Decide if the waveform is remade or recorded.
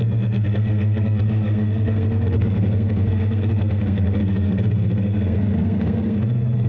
remade